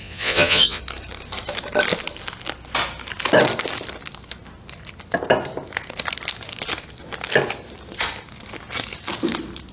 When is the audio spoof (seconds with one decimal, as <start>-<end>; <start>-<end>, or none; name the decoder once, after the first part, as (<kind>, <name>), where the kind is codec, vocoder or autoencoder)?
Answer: 0.0-0.8 (vocoder, Vocos)